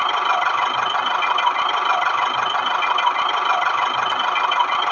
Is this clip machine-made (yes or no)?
no